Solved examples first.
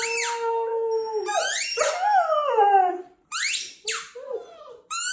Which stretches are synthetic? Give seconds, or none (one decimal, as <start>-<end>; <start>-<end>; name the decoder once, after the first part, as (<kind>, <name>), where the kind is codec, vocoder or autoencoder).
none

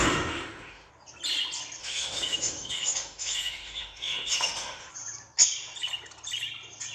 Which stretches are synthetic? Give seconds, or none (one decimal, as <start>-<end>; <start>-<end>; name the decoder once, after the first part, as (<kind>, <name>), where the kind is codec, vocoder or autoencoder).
0.0-0.9 (autoencoder, DAC-VAE); 1.8-4.9

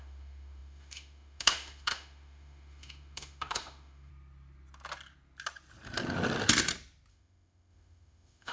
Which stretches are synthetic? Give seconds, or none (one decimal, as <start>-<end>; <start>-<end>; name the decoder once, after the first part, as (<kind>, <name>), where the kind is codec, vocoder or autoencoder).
0.0-4.1 (autoencoder, DAC-VAE); 7.1-8.5

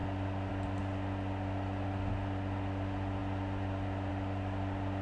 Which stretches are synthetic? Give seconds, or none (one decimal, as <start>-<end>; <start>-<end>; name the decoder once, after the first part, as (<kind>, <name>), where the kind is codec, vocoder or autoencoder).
none

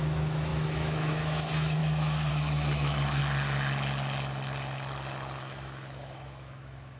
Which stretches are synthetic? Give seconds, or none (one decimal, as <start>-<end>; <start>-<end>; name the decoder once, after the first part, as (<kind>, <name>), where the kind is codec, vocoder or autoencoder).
0.0-3.2 (autoencoder, DAC-VAE); 5.4-7.0

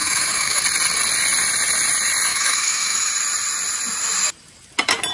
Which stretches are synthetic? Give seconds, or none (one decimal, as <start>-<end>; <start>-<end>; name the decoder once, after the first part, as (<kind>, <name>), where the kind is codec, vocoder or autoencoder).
0.0-0.6 (autoencoder, DAC-VAE); 2.3-3.1

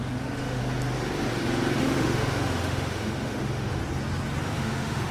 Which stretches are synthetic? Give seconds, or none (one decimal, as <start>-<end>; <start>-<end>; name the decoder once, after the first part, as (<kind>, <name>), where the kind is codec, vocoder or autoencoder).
0.0-0.6 (autoencoder, DAC-VAE); 1.8-3.8; 4.4-5.1

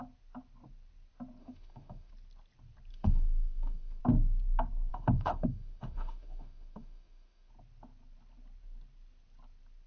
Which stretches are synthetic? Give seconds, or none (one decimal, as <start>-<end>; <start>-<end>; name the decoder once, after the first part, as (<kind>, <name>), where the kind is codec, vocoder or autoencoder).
1.4-2.1 (autoencoder, DAC-VAE); 2.9-4.0; 4.9-7.5